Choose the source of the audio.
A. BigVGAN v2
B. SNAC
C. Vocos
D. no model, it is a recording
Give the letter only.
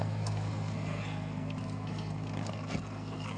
B